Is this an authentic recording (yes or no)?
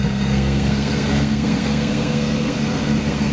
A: no